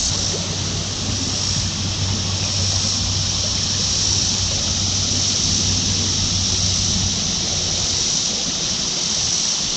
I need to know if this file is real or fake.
real